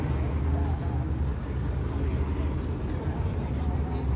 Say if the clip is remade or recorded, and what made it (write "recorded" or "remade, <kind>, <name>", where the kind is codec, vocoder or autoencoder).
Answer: recorded